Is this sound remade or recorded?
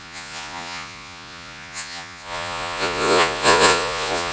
remade